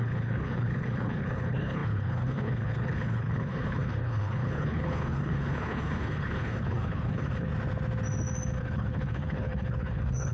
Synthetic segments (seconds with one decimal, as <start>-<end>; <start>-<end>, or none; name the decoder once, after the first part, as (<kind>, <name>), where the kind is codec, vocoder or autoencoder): 0.0-7.5 (codec, HILCodec); 8.6-10.3